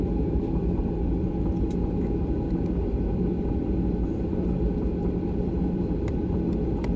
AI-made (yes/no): no